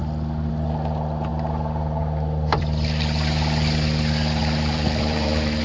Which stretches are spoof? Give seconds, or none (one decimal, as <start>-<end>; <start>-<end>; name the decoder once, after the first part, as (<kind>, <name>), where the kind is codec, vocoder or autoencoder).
4.4-5.6 (vocoder, BigVGAN v2)